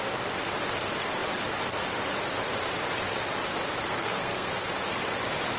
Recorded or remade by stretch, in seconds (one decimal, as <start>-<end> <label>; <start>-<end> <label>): 0.0-3.9 recorded; 3.9-4.7 remade; 4.7-5.6 recorded